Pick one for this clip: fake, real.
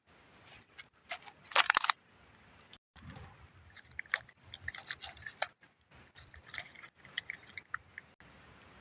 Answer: real